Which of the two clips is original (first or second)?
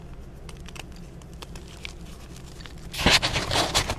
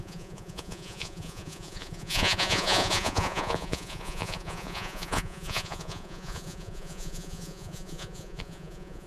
first